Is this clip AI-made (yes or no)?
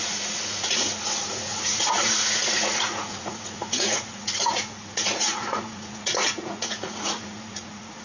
yes